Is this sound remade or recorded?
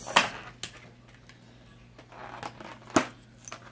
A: recorded